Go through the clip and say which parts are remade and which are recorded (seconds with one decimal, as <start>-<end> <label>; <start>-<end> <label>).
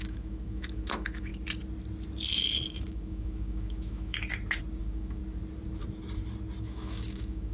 0.0-1.3 remade; 1.3-2.7 recorded; 2.7-4.3 remade; 4.3-4.8 recorded; 4.8-5.2 remade; 5.2-6.6 recorded; 6.6-7.5 remade